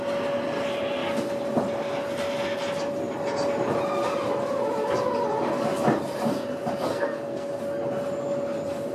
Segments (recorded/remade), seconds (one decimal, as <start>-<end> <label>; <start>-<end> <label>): 0.0-6.9 recorded; 6.9-7.6 remade; 7.6-8.9 recorded